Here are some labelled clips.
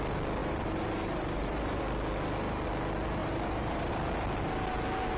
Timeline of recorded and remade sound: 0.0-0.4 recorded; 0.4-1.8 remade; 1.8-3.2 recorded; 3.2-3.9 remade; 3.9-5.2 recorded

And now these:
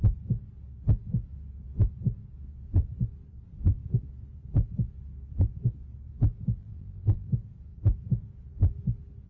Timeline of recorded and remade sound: 0.0-6.6 recorded; 6.6-7.3 remade; 7.3-9.3 recorded

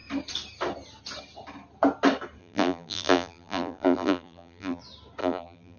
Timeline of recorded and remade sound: 0.0-2.4 recorded; 2.4-4.8 remade; 4.8-5.2 recorded; 5.2-5.8 remade

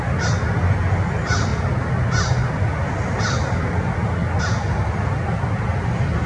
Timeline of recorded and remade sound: 0.0-6.3 recorded

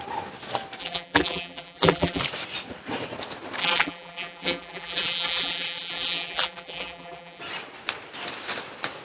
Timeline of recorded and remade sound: 0.0-0.8 recorded; 0.8-2.2 remade; 2.2-3.6 recorded; 3.6-7.4 remade; 7.4-9.0 recorded

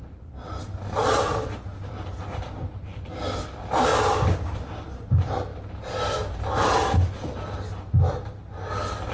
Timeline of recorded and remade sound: 0.0-3.9 recorded; 3.9-5.1 remade; 5.1-9.1 recorded

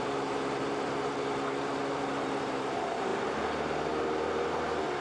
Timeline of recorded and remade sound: 0.0-5.0 remade

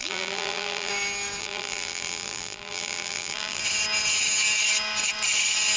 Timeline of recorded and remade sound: 0.0-0.9 remade; 0.9-1.4 recorded; 1.4-3.6 remade; 3.6-5.8 recorded